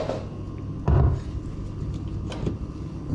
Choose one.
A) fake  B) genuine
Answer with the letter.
B